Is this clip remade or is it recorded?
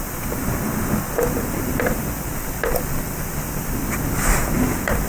remade